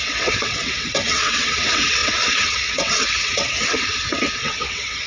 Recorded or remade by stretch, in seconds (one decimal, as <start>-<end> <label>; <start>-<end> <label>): 0.0-5.1 remade